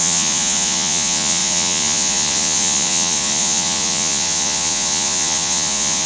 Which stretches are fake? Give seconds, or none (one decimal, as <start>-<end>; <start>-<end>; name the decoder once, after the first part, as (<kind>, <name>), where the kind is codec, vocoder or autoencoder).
0.0-6.1 (vocoder, Vocos)